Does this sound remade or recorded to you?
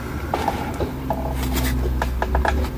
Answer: recorded